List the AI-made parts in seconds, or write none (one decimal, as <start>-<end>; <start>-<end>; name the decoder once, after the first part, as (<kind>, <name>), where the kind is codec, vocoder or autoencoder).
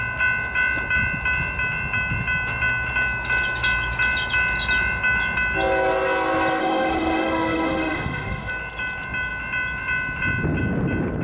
6.6-8.5 (autoencoder, DAC-VAE)